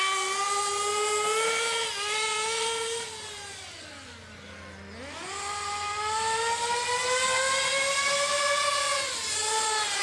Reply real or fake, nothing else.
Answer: real